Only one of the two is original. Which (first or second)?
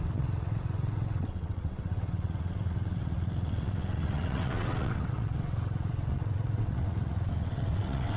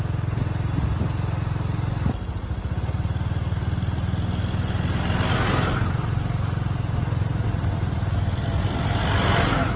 second